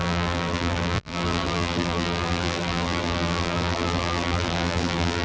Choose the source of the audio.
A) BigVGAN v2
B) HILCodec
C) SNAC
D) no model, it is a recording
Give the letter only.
A